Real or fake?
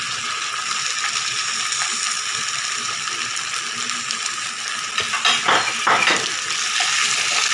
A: real